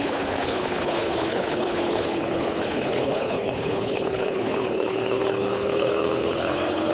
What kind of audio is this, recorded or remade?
remade